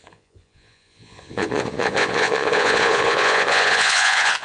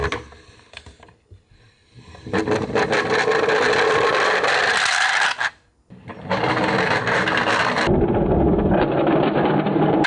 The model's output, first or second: first